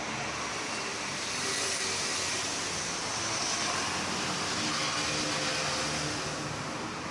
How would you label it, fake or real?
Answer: real